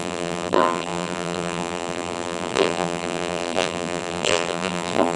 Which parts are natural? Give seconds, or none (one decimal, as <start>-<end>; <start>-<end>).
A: none